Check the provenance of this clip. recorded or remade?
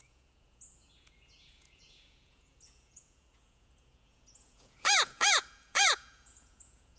remade